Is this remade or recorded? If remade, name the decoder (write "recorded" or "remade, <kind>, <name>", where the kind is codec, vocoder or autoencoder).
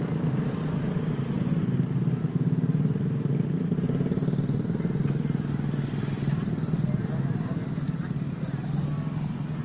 recorded